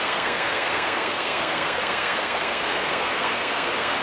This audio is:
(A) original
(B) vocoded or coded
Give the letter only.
B